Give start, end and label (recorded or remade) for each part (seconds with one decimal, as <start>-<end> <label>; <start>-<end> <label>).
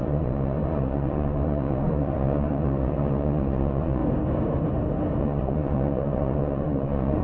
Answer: 0.0-4.0 remade; 4.0-5.2 recorded; 5.2-7.2 remade